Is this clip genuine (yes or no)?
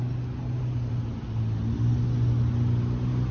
yes